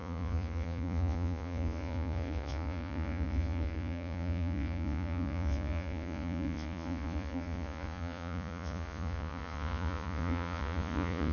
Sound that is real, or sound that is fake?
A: fake